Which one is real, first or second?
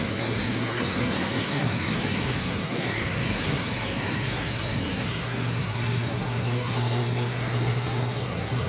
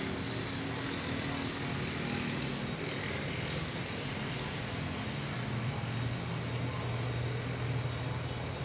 second